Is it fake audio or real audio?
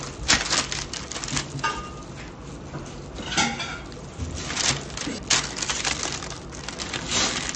real